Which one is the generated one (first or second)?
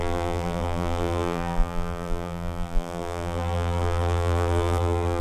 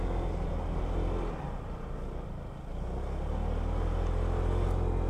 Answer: first